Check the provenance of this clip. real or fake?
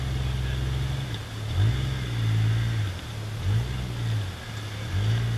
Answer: real